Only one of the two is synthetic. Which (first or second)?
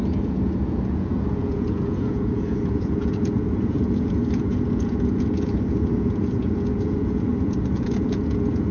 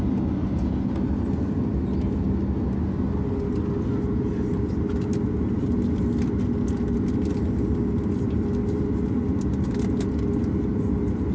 first